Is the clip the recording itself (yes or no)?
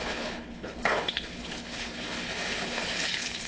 no